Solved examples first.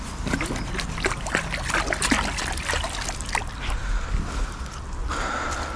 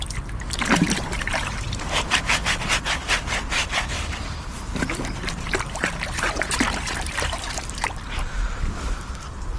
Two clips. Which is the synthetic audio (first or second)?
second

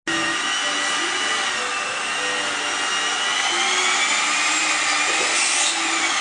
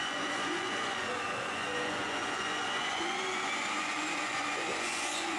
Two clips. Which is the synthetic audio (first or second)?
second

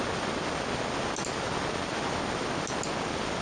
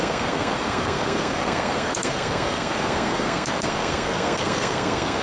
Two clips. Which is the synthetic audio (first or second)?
second